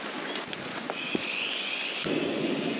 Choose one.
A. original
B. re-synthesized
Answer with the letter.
B